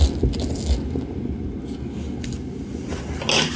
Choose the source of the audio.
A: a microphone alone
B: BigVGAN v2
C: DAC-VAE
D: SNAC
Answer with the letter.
A